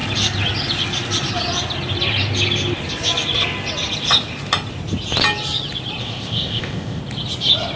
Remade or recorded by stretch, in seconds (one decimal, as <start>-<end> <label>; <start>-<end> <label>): 0.0-6.0 recorded; 6.0-7.0 remade; 7.0-7.8 recorded